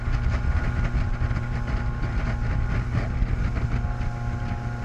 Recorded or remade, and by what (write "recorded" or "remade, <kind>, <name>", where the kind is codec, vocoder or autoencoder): recorded